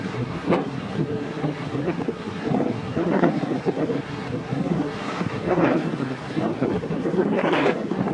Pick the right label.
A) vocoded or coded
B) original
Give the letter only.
A